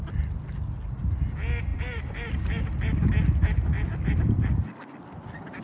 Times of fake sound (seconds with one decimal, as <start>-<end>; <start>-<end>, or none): none